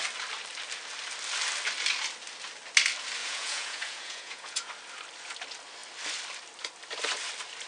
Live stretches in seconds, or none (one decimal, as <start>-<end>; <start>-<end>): 0.0-3.2; 4.7-7.7